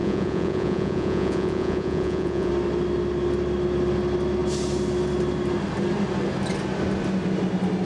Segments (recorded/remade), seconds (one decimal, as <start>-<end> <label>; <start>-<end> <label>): 0.0-2.5 remade; 2.5-7.8 recorded